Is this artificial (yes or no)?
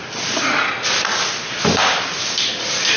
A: no